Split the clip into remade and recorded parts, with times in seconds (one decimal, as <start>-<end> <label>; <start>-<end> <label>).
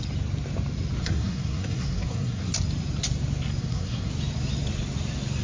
0.0-1.0 recorded; 1.0-2.5 remade; 2.5-3.6 recorded; 3.6-4.1 remade; 4.1-5.4 recorded